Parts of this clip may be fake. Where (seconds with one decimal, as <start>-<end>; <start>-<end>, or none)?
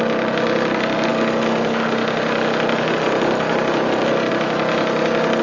none